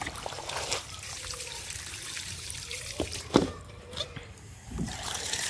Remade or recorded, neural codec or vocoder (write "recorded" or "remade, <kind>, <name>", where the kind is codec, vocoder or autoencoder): remade, vocoder, BigVGAN v2